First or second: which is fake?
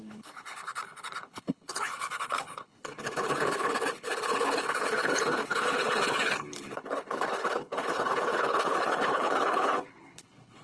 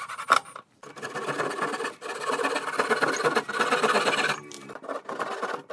first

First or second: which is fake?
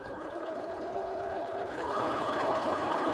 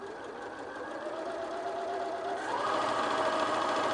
first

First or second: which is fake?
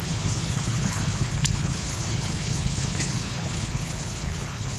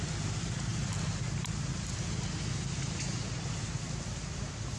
first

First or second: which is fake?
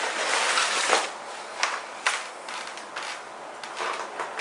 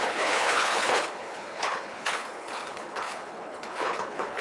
second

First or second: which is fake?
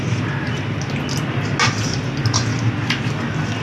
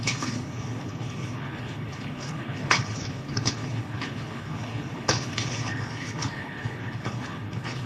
second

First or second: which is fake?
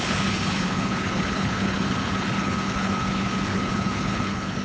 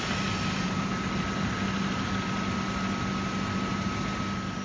first